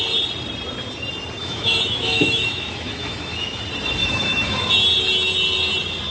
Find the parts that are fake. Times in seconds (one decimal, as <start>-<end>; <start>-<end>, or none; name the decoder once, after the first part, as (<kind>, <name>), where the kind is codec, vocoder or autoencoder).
1.4-3.6 (autoencoder, DAC-VAE); 4.0-4.7